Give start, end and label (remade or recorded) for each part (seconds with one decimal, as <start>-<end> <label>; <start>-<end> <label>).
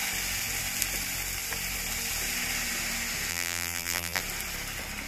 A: 0.0-3.3 recorded; 3.3-4.2 remade; 4.2-5.1 recorded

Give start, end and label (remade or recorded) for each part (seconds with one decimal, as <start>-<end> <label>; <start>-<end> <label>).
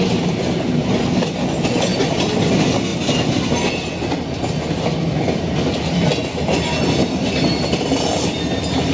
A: 0.0-8.9 recorded